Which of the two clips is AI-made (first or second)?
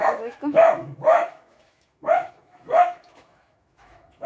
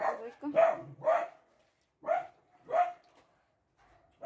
first